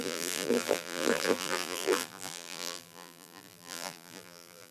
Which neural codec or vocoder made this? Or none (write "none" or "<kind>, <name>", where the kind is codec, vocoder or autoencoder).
vocoder, BigVGAN v2